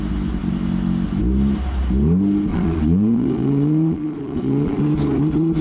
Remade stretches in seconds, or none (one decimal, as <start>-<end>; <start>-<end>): 2.5-4.8